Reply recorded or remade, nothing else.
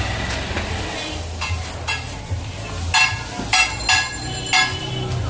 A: recorded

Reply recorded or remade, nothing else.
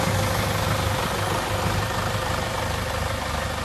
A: recorded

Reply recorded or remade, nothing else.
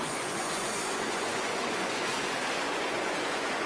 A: remade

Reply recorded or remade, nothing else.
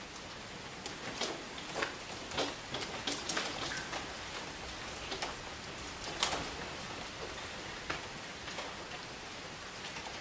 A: recorded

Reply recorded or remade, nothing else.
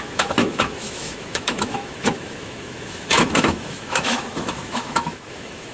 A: remade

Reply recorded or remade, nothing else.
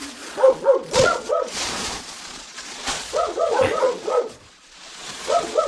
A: remade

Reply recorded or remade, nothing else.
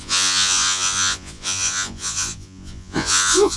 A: remade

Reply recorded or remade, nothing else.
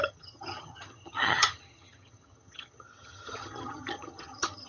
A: remade